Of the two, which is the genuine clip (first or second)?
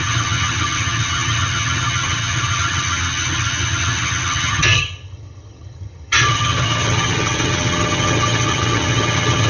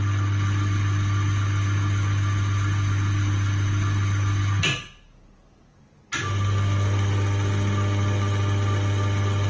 second